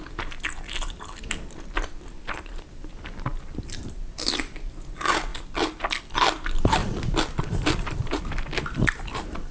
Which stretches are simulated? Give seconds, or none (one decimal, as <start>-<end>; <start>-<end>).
6.8-8.2